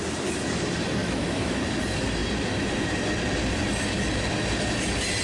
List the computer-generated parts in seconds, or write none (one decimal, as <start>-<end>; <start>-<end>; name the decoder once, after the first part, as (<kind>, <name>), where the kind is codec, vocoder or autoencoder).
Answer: 1.0-1.6 (autoencoder, DAC-VAE)